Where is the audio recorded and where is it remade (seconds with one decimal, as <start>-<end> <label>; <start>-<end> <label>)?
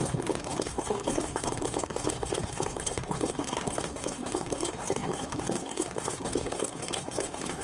0.0-7.6 remade